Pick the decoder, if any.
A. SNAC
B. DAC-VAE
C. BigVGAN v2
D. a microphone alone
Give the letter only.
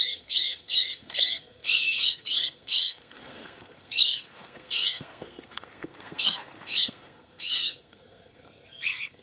A